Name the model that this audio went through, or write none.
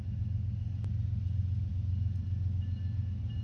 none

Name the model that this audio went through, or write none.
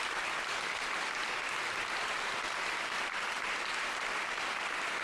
none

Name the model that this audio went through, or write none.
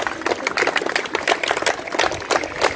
none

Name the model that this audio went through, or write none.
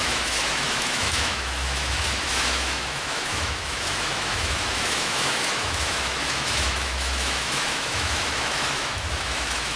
autoencoder, DAC-VAE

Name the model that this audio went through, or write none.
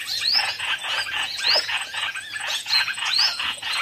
vocoder, Vocos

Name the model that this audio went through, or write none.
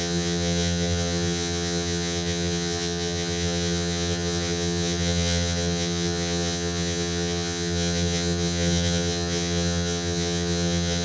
vocoder, HiFi-GAN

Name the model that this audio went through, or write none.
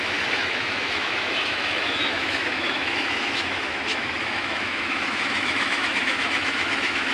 autoencoder, DAC-VAE